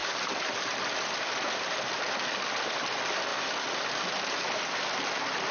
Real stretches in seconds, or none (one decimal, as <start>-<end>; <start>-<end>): 2.9-3.3; 4.1-5.5